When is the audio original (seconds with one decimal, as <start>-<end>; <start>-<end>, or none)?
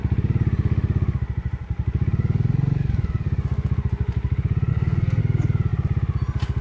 0.0-4.7; 5.2-6.6